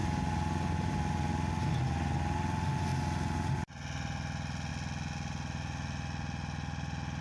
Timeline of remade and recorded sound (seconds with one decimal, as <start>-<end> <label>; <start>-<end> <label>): 0.0-7.2 recorded